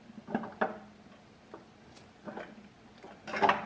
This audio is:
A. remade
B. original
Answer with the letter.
B